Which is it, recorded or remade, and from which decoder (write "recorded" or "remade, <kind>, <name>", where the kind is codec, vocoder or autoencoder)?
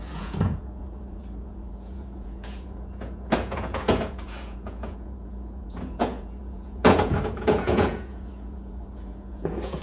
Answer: remade, vocoder, Vocos